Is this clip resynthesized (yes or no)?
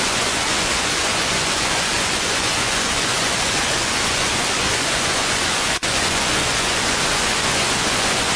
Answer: yes